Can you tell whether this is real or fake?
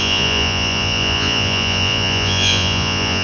fake